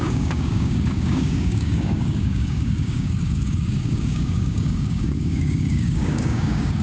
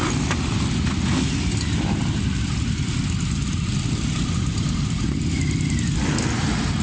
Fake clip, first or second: first